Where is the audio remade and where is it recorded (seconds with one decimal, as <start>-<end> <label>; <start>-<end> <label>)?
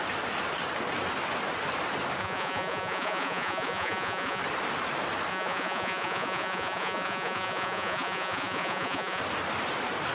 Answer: 0.0-2.2 recorded; 2.2-4.4 remade; 4.4-5.3 recorded; 5.3-9.2 remade; 9.2-10.1 recorded